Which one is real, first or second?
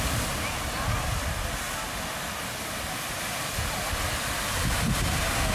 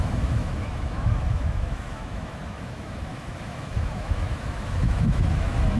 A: first